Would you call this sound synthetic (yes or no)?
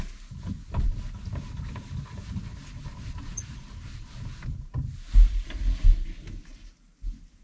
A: no